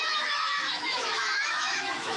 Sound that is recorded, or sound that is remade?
remade